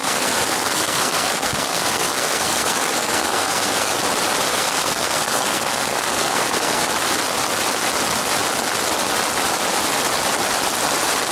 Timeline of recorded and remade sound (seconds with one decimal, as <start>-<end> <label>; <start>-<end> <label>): 0.0-3.9 remade; 3.9-4.5 recorded; 4.5-6.9 remade; 6.9-11.3 recorded